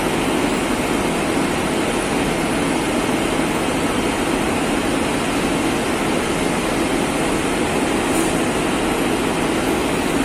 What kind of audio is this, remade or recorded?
recorded